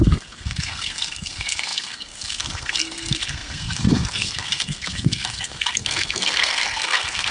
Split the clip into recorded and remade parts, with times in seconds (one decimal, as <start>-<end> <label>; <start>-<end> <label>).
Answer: 0.0-7.3 remade